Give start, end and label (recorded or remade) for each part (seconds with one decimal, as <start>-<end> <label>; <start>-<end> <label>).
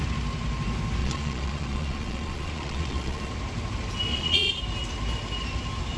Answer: 0.0-1.0 recorded; 1.0-3.3 remade; 3.3-4.1 recorded; 4.1-4.6 remade; 4.6-6.0 recorded